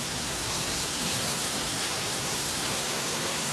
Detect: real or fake fake